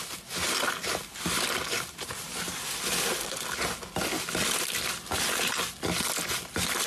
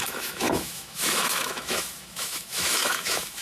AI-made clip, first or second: second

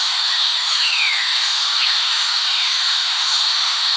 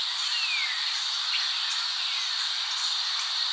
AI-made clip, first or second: first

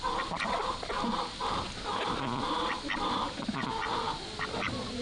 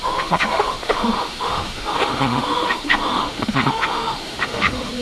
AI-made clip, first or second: second